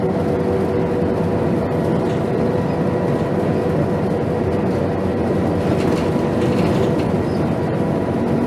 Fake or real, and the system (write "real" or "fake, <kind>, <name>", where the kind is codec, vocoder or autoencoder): real